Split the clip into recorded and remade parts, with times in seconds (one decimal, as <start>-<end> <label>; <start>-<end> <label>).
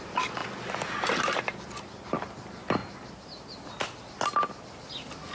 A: 0.0-5.3 recorded